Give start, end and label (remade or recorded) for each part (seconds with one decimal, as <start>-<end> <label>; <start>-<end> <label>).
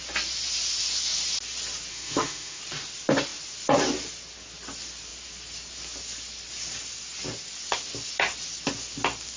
0.0-1.9 recorded; 1.9-2.6 remade; 2.6-9.4 recorded